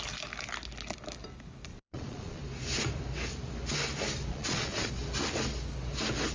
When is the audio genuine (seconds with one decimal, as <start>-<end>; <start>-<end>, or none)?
0.0-1.7; 2.4-4.3; 4.9-6.3